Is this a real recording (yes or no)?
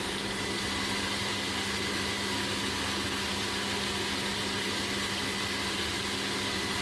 yes